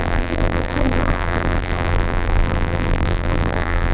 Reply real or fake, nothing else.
fake